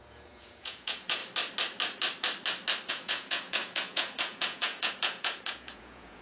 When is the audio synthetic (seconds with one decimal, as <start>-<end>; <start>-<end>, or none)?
0.0-1.2; 2.9-6.2